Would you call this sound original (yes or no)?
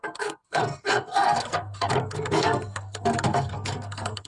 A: no